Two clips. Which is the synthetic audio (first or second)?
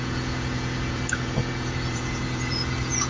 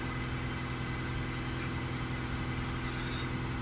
first